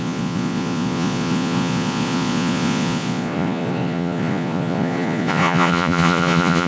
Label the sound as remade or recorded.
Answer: remade